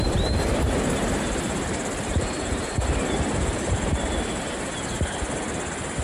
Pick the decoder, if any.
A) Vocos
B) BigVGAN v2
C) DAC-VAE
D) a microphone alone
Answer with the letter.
B